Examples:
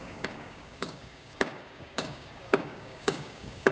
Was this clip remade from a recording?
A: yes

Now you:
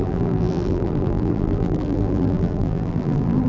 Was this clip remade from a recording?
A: yes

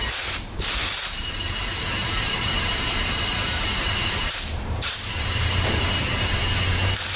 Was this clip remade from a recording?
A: yes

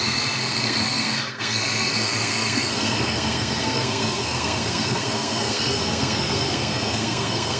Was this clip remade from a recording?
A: yes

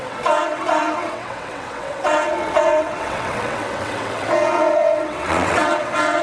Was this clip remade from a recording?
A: yes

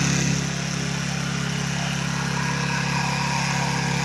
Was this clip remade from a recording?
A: no